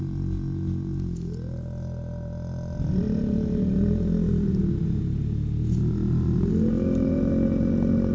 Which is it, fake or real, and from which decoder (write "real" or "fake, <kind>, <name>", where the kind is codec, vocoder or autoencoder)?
real